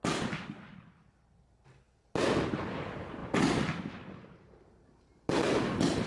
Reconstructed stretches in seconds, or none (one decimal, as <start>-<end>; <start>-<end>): 3.2-6.1